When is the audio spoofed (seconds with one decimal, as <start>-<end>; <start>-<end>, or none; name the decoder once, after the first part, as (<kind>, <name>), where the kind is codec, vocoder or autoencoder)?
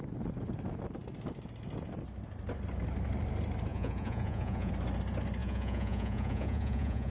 3.7-4.7 (vocoder, Vocos); 5.4-7.1